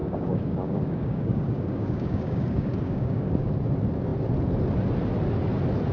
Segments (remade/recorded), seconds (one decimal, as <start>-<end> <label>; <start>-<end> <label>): 0.0-3.5 remade; 3.5-5.9 recorded